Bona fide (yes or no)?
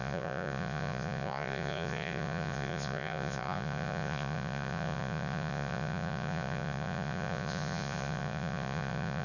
no